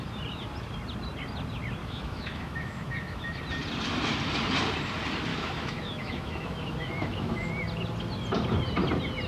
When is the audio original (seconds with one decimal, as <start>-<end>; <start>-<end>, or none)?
0.0-1.8; 3.4-5.3; 7.5-9.3